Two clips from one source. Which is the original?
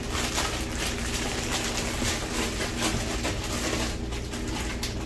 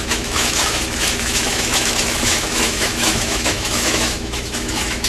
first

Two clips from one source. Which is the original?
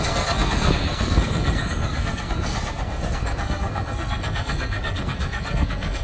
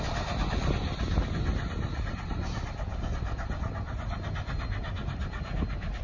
second